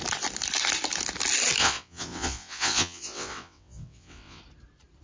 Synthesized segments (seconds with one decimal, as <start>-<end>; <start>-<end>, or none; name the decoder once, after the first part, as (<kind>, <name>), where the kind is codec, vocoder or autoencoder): 1.6-4.4 (vocoder, WaveNeXt)